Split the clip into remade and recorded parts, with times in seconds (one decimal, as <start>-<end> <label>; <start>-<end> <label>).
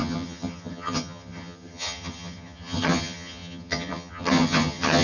0.0-5.0 remade